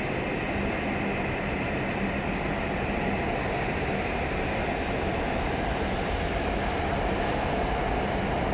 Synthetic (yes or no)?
no